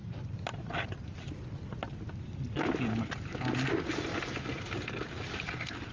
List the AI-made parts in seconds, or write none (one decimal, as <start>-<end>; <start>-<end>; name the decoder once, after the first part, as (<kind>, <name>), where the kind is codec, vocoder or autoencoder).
0.0-1.3 (vocoder, BigVGAN v2)